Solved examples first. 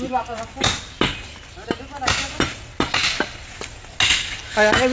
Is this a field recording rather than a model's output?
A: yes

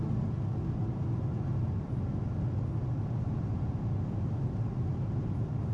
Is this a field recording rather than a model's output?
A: yes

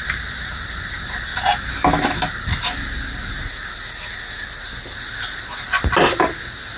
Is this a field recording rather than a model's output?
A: yes